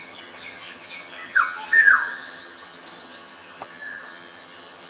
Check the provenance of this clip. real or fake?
fake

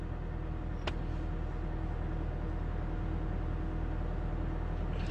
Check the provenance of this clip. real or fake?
real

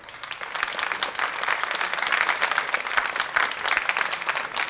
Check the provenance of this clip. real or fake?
real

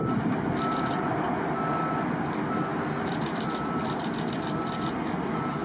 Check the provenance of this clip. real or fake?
real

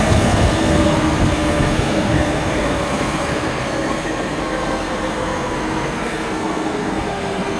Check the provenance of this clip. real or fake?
fake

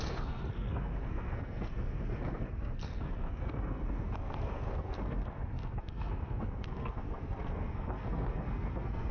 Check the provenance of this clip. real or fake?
fake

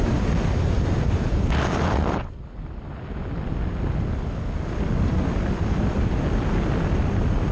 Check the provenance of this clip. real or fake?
real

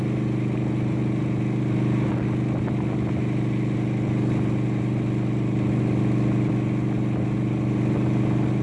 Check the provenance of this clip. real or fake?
real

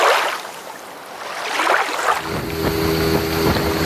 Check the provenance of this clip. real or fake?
real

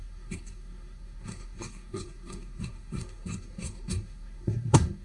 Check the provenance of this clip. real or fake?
fake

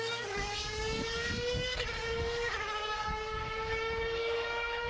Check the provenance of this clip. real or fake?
fake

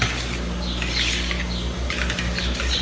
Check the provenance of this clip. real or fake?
real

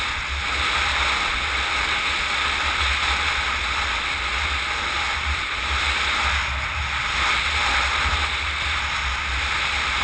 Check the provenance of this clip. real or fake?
real